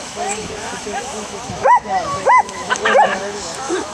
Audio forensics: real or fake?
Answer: fake